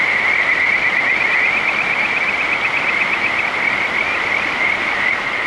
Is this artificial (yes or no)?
no